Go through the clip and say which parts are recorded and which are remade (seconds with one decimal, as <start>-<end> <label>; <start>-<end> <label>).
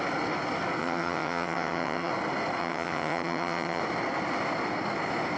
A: 0.0-0.8 recorded; 0.8-2.1 remade; 2.1-2.6 recorded; 2.6-3.8 remade; 3.8-5.4 recorded